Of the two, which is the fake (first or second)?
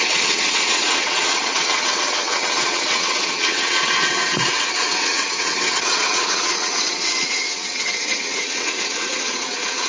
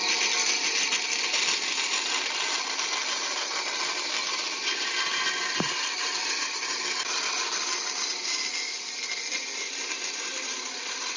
first